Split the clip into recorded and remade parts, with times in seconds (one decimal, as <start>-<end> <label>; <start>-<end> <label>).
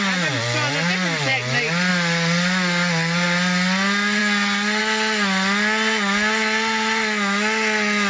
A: 0.0-8.1 recorded